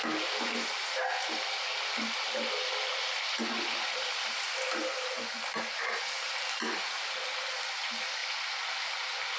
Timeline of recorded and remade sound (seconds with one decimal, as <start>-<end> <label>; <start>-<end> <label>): 0.0-9.4 recorded